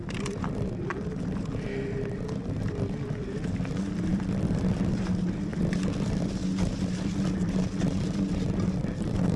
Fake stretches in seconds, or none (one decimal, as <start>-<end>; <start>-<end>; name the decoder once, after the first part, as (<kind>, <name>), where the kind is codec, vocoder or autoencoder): 4.1-4.7 (vocoder, BigVGAN v2); 5.5-6.3